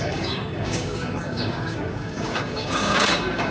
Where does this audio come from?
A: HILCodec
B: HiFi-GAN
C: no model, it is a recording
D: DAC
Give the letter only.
D